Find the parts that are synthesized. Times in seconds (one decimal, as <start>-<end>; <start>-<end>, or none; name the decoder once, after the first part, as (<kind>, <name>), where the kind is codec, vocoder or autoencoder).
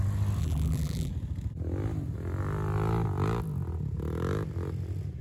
0.4-1.1 (vocoder, BigVGAN v2)